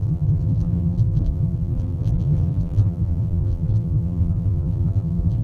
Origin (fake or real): fake